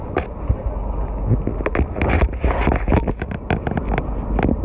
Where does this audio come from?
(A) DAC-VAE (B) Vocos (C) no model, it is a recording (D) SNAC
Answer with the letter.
C